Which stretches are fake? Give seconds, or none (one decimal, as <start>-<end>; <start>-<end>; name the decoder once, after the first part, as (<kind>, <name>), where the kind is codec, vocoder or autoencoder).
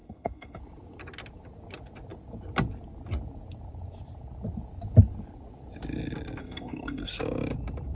0.0-0.6 (codec, SNAC); 6.4-7.1